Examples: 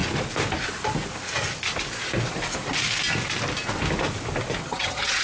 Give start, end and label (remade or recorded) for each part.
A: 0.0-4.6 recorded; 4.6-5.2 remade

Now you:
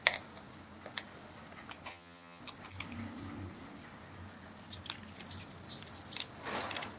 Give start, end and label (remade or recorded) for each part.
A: 0.0-1.9 recorded; 1.9-2.4 remade; 2.4-7.0 recorded

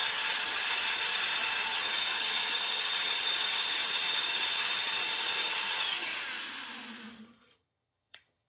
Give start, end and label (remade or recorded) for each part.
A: 0.0-6.1 remade; 6.1-7.1 recorded; 7.1-8.5 remade